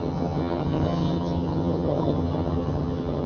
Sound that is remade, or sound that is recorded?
remade